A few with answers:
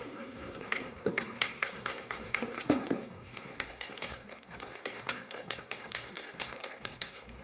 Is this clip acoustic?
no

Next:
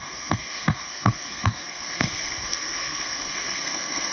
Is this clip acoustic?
no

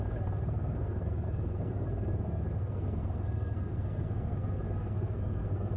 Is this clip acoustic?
no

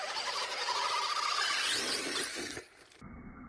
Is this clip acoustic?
yes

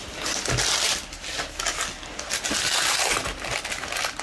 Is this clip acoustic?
yes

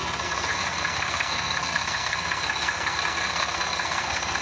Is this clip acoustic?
no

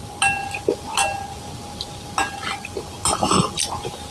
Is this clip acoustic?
yes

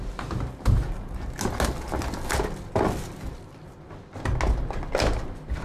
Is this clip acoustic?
yes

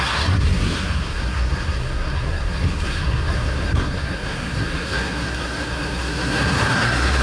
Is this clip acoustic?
no